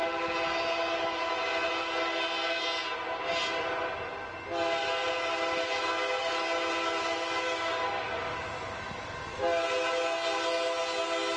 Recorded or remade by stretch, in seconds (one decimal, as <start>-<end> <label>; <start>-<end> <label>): 0.0-11.4 recorded